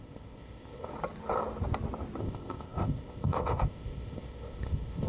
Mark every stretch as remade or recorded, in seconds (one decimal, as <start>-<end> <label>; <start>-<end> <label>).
0.0-0.9 remade; 0.9-2.2 recorded; 2.2-5.1 remade